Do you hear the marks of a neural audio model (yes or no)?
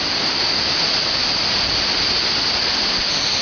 no